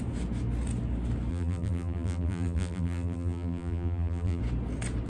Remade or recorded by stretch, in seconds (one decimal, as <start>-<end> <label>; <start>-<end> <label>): 0.0-1.3 recorded; 1.3-4.4 remade; 4.4-5.1 recorded